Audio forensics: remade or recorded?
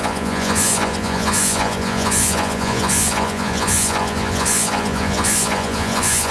remade